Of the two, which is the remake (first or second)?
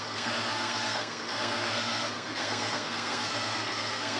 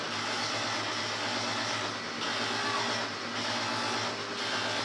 first